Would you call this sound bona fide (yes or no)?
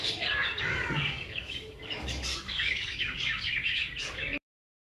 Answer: no